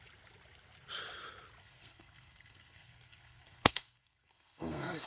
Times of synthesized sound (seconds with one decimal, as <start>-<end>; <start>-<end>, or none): 1.6-5.1

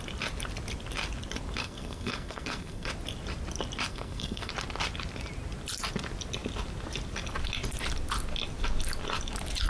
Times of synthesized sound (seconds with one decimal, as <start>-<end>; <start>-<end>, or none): 1.6-2.9; 3.9-4.5

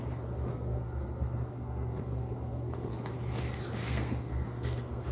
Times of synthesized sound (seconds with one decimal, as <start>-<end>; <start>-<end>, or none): 0.5-2.9; 3.8-5.1

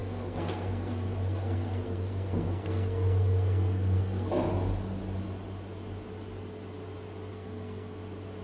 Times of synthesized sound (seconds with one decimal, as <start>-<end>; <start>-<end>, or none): 0.0-4.3; 7.3-8.0

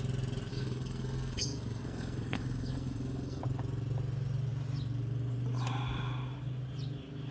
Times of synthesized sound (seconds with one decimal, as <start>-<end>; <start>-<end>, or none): 0.5-3.4

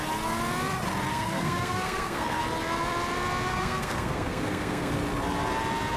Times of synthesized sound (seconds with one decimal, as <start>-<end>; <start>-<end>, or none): 1.1-2.4; 3.5-4.9

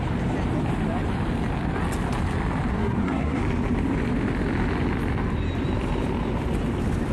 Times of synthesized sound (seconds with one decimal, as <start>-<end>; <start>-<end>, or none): 2.7-3.4